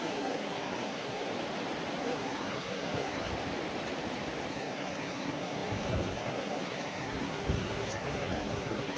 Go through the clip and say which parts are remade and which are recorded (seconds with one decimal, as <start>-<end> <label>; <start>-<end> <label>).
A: 0.0-1.3 remade; 1.3-2.0 recorded; 2.0-3.3 remade; 3.3-4.5 recorded; 4.5-9.0 remade